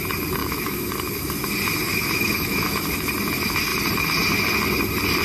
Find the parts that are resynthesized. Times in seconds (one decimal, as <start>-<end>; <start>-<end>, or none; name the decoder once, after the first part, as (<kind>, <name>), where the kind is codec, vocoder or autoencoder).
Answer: 0.4-1.5 (autoencoder, DAC-VAE); 1.9-3.1